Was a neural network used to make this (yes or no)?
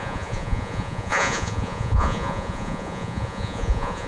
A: yes